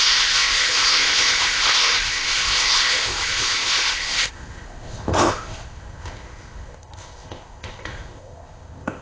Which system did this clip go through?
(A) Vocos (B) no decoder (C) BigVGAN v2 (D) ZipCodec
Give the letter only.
D